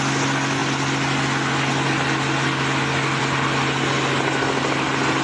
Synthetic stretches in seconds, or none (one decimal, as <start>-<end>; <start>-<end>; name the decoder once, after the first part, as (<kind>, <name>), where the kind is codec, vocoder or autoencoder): none